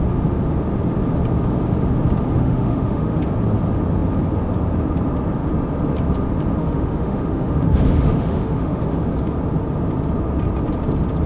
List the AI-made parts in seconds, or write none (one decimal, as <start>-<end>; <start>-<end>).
2.4-3.2; 6.6-9.0